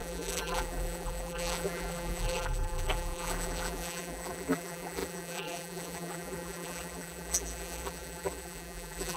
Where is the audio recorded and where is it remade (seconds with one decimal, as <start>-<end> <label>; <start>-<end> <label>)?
0.0-9.2 remade